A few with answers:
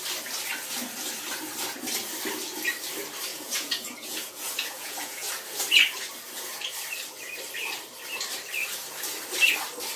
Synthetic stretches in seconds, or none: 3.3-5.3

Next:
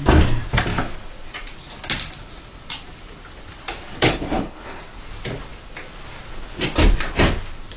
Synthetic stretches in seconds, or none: 3.9-4.8

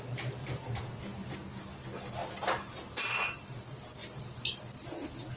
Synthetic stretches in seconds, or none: none

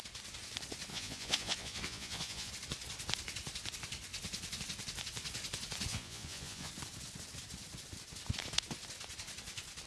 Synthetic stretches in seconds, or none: 0.9-2.5; 5.9-6.7